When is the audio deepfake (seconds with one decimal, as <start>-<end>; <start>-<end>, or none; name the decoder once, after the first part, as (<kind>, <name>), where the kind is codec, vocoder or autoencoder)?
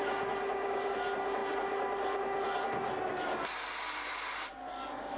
none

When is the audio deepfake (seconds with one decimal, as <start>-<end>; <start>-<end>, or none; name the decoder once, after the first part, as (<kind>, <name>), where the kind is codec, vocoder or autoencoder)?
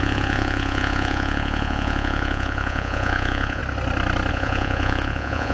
0.0-3.6 (vocoder, Vocos); 4.3-5.5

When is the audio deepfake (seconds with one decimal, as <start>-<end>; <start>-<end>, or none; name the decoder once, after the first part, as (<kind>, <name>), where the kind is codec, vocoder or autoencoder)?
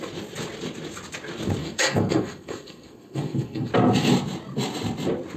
1.6-3.7 (codec, SNAC)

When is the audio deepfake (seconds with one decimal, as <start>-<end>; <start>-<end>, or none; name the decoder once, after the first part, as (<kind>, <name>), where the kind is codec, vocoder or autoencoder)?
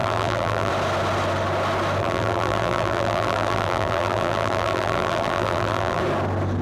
0.0-0.7 (vocoder, BigVGAN v2); 2.0-6.0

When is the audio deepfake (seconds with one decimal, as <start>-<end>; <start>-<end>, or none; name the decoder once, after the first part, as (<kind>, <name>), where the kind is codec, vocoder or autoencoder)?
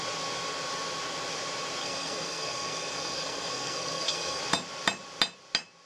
1.8-4.4 (codec, SNAC)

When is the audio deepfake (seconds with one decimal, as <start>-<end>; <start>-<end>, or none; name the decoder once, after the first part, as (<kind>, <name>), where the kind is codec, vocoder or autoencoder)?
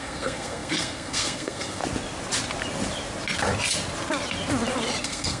0.0-1.8 (codec, SNAC); 5.0-5.4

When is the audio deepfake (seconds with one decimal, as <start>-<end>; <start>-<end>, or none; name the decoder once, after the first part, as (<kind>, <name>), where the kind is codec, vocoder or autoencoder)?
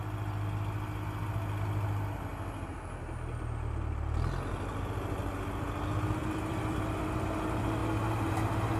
6.2-6.8 (vocoder, BigVGAN v2)